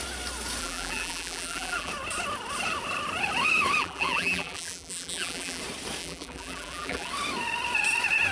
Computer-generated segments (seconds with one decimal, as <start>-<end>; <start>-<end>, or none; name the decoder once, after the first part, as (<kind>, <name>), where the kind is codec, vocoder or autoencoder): 0.6-1.9 (vocoder, BigVGAN v2); 3.8-5.6; 6.0-7.1